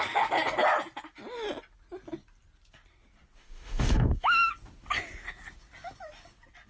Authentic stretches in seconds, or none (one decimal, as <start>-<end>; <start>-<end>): 0.0-3.4; 4.5-6.7